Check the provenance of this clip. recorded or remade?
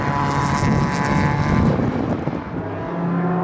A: recorded